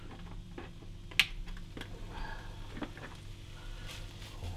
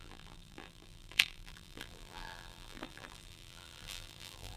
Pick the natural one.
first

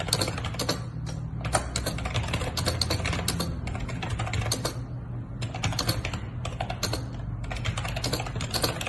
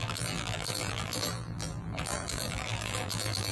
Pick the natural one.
first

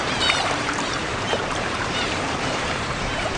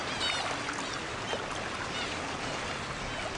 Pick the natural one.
second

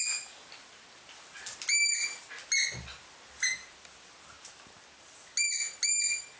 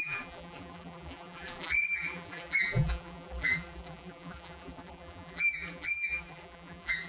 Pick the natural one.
first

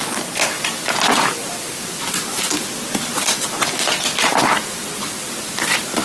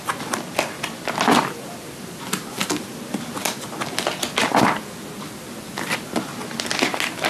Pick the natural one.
second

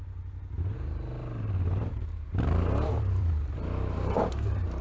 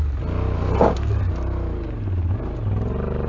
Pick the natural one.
second